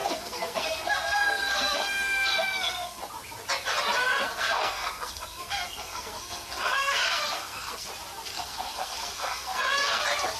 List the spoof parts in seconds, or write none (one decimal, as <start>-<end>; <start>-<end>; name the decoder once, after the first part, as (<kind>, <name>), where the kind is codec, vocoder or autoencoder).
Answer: 0.0-3.0 (codec, SNAC); 4.0-7.9; 8.3-10.0